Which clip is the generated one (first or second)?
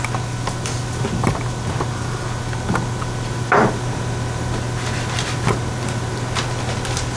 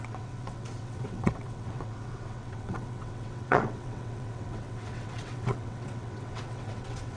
second